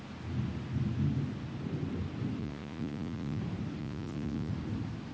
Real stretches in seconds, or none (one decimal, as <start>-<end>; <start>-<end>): 0.0-2.4; 3.4-3.8; 4.5-5.1